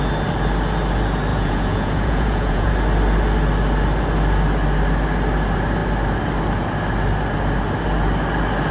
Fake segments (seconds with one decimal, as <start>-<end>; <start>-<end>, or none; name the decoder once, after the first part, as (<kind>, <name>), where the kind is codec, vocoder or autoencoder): 1.3-2.7 (vocoder, Vocos)